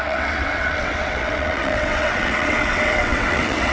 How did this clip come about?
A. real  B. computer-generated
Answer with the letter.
B